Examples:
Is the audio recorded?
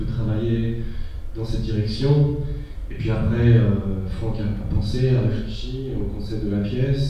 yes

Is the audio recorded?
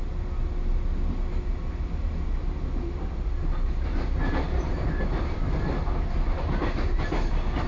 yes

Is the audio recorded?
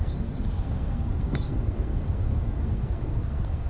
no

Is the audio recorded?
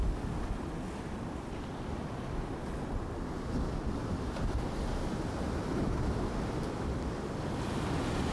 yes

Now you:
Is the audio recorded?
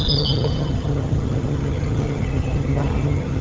no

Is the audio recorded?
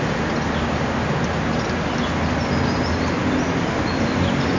yes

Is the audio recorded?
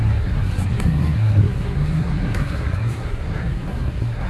no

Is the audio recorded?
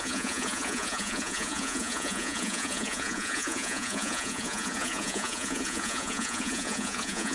no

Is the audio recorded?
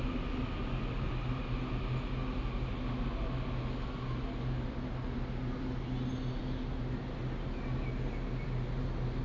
yes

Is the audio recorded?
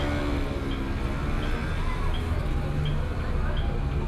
yes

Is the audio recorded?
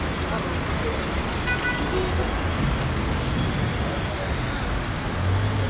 yes